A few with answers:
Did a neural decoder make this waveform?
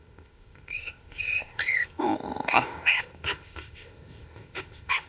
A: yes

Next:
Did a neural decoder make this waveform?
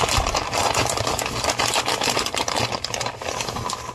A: no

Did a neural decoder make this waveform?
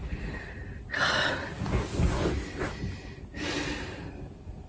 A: no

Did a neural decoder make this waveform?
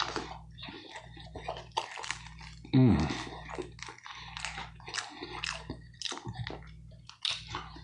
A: no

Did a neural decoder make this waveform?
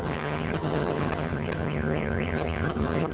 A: yes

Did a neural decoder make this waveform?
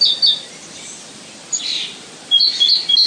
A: no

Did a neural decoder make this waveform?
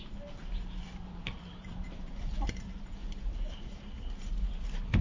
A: yes